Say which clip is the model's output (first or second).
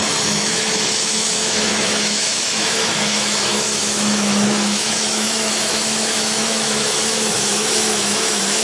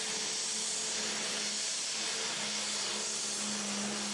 first